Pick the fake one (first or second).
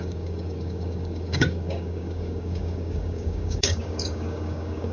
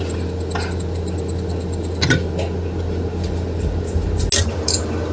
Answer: first